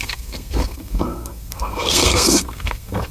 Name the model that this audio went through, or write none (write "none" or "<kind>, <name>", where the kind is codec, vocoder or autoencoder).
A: codec, SNAC